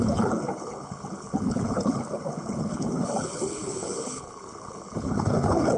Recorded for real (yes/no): no